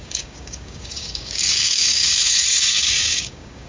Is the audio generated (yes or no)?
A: yes